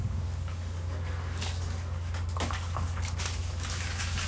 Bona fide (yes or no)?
no